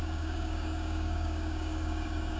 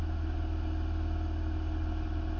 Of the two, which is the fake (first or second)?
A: first